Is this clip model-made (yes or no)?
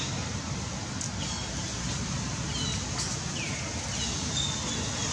no